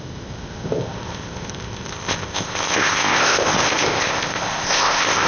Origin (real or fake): fake